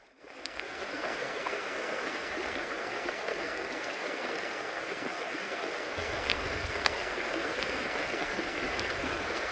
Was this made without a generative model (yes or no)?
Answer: no